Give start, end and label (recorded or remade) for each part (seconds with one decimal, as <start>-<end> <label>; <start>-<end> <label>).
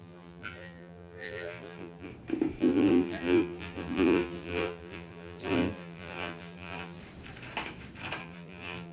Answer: 0.0-2.1 remade; 2.1-2.6 recorded; 2.6-7.0 remade; 7.0-8.2 recorded; 8.2-8.9 remade